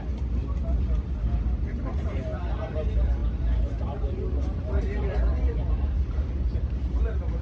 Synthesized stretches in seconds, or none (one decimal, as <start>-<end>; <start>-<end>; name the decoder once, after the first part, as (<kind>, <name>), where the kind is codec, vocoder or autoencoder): none